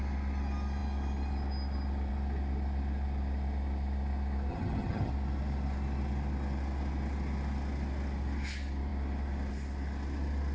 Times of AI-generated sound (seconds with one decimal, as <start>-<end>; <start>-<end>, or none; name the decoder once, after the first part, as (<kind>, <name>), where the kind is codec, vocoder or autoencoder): 4.5-5.1 (vocoder, HiFi-GAN)